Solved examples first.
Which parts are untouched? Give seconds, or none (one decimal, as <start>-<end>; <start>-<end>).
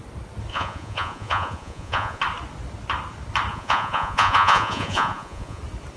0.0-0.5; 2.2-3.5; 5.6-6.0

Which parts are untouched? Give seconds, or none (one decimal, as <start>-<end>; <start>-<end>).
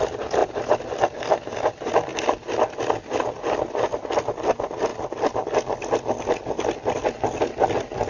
0.0-0.4; 1.1-8.1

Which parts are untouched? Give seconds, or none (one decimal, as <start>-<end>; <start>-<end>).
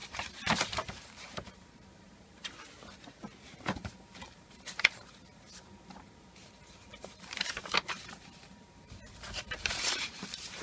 none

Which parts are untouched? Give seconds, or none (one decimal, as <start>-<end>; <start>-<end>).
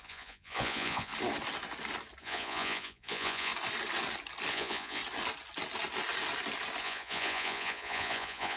1.1-2.2; 3.5-4.5; 5.0-6.8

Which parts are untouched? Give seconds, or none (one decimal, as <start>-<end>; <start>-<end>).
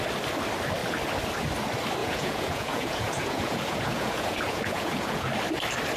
0.0-2.0; 5.3-6.0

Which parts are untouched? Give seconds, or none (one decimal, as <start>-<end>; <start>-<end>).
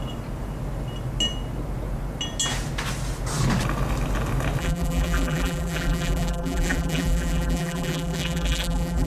0.0-4.6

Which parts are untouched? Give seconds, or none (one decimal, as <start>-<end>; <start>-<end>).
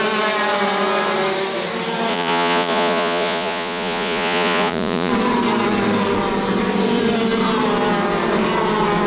0.0-2.1; 5.1-9.1